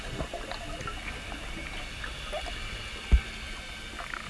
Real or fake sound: real